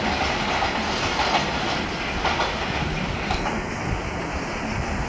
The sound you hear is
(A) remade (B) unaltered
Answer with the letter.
B